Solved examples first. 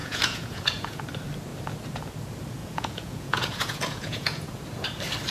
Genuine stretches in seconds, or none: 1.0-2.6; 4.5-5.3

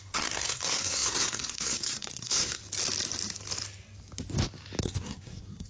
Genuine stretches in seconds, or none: 2.6-4.8

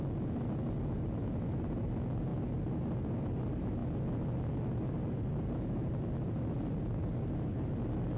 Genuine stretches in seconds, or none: 0.0-8.2

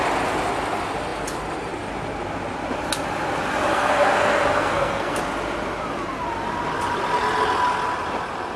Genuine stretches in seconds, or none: 0.0-3.7; 5.2-8.6

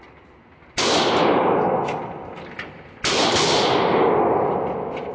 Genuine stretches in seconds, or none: 0.0-5.1

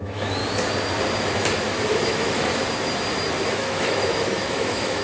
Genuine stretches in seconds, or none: 0.4-2.1; 2.5-3.5

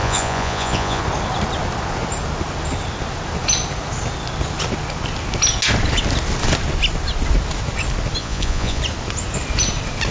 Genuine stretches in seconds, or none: 1.0-8.2; 8.8-10.1

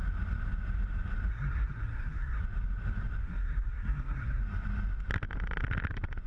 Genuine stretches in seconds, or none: 0.0-1.3; 2.4-3.2; 4.4-6.3